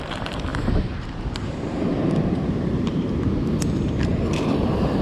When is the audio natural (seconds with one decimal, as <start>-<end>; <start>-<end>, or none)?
none

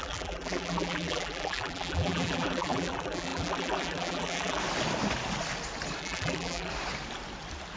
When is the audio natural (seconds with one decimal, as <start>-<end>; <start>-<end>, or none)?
4.6-6.0; 6.7-7.8

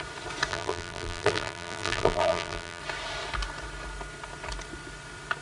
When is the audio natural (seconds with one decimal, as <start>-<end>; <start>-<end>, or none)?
0.0-0.5; 2.8-5.4

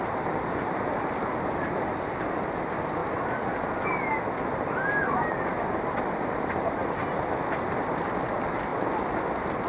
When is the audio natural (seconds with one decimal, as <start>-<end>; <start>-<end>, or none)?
0.0-9.7

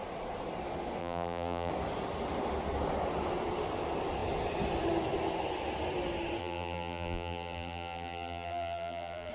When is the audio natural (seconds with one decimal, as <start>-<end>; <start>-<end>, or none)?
0.0-1.0; 1.7-6.4